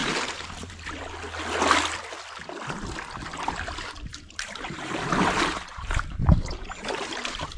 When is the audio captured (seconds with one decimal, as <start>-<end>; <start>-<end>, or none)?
0.7-4.1